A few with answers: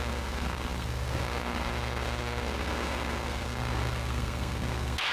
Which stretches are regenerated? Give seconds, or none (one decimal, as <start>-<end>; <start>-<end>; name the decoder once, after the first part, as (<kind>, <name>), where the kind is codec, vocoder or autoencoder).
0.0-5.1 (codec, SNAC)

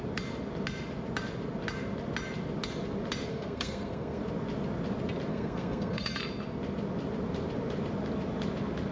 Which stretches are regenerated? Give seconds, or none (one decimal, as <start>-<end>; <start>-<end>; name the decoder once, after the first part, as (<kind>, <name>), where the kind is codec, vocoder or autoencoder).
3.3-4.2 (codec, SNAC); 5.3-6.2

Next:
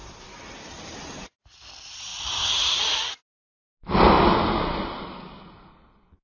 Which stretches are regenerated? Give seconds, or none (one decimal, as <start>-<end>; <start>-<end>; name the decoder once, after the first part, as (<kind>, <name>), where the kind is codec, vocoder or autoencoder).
none

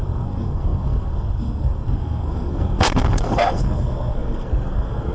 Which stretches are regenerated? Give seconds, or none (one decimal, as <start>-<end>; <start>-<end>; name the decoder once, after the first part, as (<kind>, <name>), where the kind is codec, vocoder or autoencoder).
0.0-5.1 (codec, SNAC)

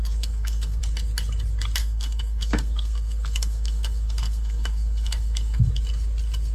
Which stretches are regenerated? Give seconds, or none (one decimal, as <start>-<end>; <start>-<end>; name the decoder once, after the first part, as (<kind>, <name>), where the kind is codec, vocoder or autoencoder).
0.0-0.8 (codec, SNAC); 1.8-5.7